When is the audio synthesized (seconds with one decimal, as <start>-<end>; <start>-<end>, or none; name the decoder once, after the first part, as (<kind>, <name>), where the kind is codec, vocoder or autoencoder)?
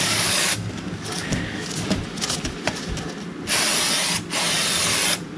0.0-2.0 (codec, DAC)